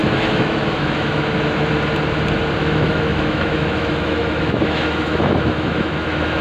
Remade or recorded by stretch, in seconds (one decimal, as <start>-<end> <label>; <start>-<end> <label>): 0.0-1.7 remade; 1.7-2.6 recorded; 2.6-6.4 remade